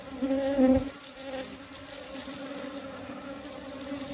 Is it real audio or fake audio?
real